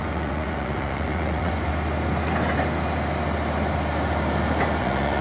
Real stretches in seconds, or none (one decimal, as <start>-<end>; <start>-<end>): 1.7-4.8